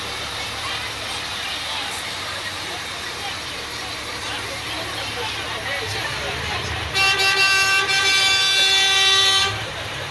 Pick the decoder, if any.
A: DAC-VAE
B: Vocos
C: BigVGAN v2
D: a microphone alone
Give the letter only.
C